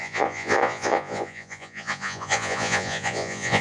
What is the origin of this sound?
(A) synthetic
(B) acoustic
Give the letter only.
A